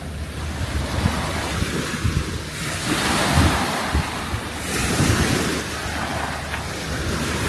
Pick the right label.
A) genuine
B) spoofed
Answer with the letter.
A